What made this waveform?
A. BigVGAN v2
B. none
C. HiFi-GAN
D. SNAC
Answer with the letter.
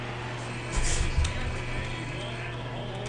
B